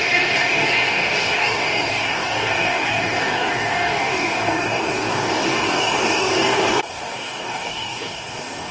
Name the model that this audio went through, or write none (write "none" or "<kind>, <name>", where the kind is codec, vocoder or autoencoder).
codec, DAC